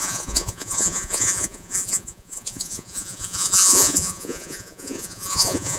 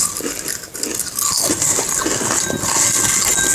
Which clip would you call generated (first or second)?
first